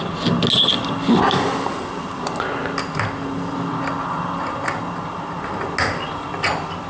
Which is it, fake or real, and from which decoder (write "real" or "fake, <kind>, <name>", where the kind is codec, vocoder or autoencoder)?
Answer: real